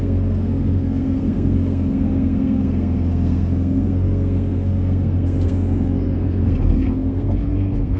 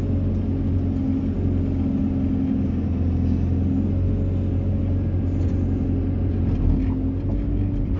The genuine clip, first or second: second